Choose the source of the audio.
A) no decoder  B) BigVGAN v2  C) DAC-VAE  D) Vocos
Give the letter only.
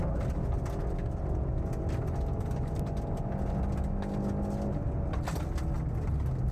A